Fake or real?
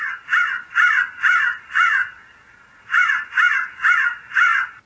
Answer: fake